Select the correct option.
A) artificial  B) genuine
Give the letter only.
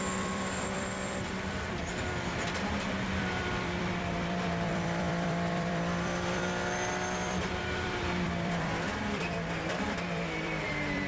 A